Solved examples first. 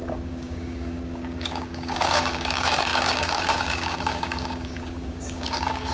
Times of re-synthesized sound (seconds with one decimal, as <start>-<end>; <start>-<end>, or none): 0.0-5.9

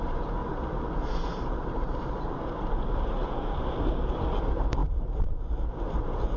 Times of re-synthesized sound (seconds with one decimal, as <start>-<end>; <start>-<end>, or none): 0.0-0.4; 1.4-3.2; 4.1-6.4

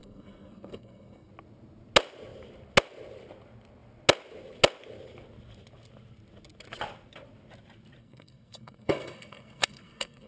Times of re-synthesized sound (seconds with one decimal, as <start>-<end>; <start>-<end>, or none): 0.0-1.3; 8.0-10.3